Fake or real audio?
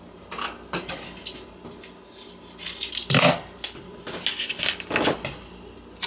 real